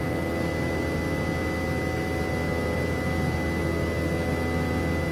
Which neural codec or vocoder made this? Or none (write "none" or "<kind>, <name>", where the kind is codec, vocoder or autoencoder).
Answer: none